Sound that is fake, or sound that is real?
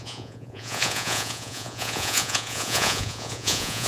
fake